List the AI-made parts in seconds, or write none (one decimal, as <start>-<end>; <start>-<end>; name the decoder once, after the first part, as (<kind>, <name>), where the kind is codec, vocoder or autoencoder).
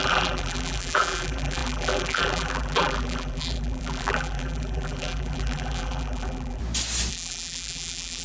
0.0-6.6 (vocoder, BigVGAN v2); 7.1-8.2